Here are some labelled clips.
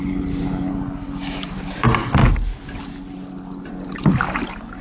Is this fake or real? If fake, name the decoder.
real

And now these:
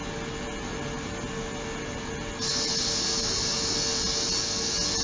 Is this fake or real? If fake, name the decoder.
real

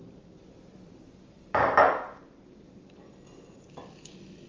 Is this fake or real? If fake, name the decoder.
real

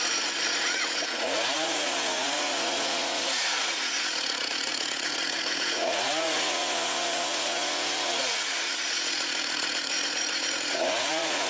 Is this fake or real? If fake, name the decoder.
fake, vocoder, Vocos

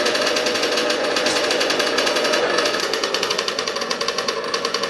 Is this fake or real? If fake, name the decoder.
fake, vocoder, Vocos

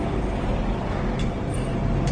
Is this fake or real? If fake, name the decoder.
real